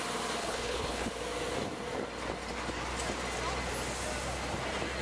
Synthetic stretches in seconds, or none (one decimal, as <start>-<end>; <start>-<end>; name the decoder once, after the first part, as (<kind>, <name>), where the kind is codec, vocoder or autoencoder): 0.4-1.1 (codec, HILCodec)